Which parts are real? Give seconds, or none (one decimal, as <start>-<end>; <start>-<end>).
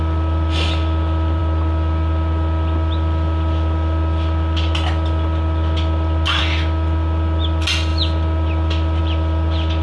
0.0-9.8